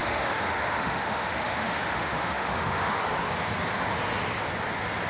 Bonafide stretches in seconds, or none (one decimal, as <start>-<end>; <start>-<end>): 3.0-5.1